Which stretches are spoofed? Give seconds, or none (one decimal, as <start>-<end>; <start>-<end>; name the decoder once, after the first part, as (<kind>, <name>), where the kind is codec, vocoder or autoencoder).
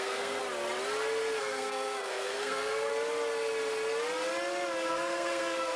0.0-0.4 (codec, SNAC); 1.4-2.9; 4.9-5.8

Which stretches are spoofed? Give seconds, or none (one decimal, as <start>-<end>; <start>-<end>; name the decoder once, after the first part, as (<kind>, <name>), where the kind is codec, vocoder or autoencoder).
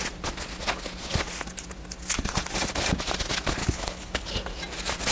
3.6-4.3 (codec, HILCodec)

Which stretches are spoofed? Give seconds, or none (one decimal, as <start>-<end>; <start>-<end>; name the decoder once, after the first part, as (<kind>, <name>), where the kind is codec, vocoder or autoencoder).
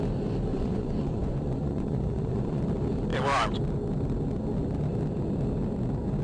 0.5-2.6 (vocoder, Vocos)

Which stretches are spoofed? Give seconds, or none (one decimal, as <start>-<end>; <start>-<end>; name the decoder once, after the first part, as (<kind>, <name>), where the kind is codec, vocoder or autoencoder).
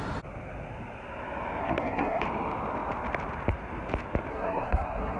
1.6-2.2 (codec, SNAC); 4.3-5.2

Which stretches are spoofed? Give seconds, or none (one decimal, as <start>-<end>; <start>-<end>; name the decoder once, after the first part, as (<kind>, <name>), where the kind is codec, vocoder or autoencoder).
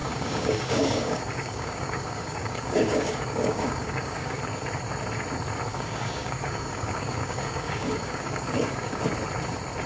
0.0-4.4 (codec, DAC); 5.7-9.0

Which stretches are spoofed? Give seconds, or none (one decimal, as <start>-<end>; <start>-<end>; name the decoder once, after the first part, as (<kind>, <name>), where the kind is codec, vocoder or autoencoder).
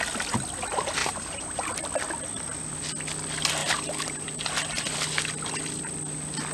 1.0-1.7 (vocoder, BigVGAN v2); 3.6-4.5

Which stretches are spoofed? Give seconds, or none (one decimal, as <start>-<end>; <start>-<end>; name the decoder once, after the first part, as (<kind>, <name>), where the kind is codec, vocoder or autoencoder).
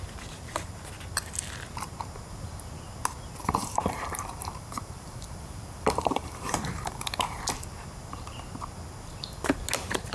3.4-7.4 (vocoder, BigVGAN v2)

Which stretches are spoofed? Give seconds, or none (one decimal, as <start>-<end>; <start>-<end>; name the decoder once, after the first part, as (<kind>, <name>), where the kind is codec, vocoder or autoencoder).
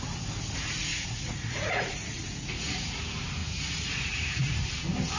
0.9-3.0 (vocoder, Vocos); 3.4-4.7